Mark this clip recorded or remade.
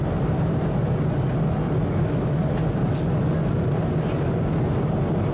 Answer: recorded